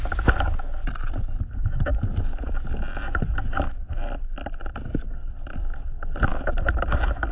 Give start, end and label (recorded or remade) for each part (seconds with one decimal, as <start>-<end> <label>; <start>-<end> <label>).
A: 0.0-7.3 recorded